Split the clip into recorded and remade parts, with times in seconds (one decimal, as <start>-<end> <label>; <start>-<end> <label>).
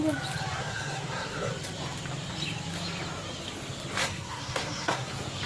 0.0-0.6 recorded; 0.6-1.5 remade; 1.5-4.0 recorded; 4.0-5.1 remade; 5.1-5.5 recorded